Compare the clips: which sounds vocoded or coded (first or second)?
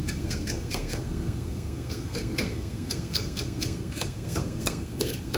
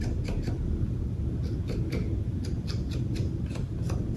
first